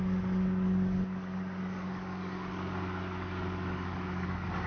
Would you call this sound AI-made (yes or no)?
yes